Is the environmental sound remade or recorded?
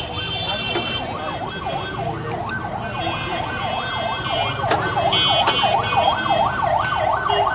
recorded